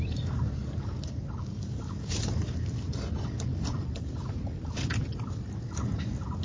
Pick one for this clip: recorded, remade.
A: recorded